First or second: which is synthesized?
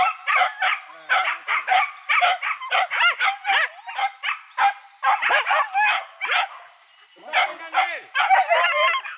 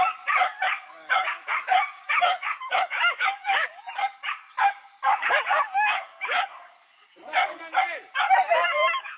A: second